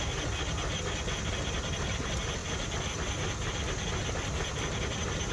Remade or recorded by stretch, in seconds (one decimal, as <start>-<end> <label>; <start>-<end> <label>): 0.0-5.3 recorded